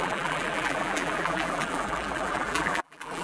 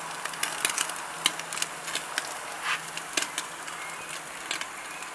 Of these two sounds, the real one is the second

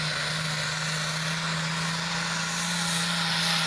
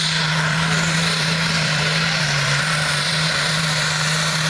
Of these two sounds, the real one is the first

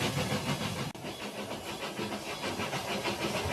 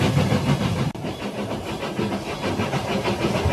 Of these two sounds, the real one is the first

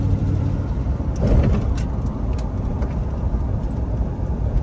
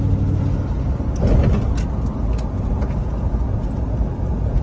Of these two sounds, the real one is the second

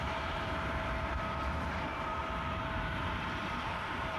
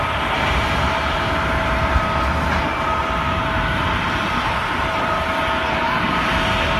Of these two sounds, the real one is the second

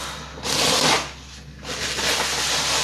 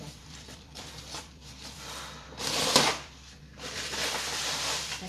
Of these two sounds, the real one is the first